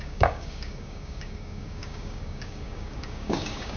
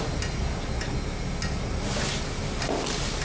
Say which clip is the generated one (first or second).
first